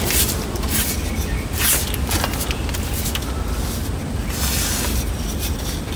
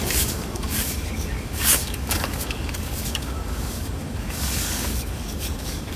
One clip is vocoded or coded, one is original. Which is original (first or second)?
first